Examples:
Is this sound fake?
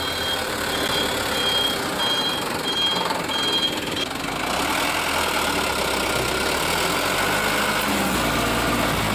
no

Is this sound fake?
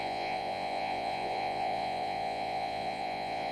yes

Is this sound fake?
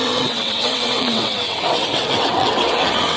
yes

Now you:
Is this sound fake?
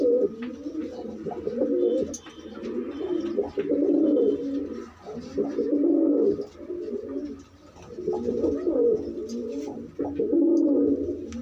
no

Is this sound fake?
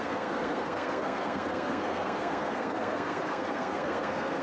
yes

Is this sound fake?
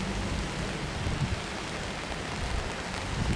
no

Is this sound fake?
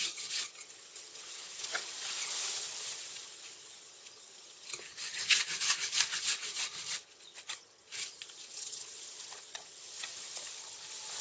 yes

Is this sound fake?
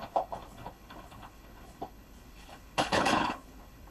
yes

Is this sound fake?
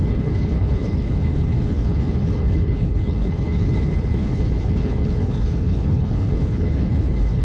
yes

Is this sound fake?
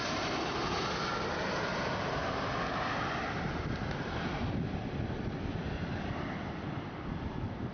no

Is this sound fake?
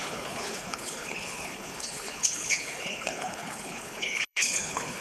yes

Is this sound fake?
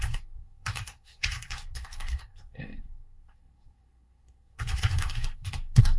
yes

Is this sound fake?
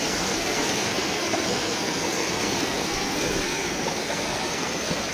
yes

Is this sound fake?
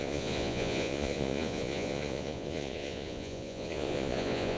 yes